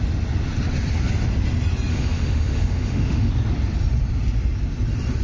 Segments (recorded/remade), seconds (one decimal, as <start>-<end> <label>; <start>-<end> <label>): 0.0-1.9 recorded; 1.9-3.3 remade; 3.3-5.2 recorded